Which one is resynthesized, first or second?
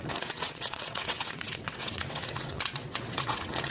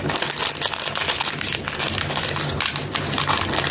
first